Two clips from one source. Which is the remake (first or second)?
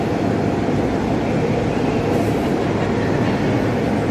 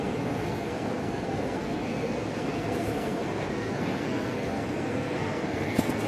second